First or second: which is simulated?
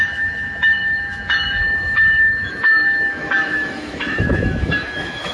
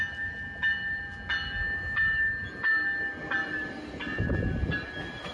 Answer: first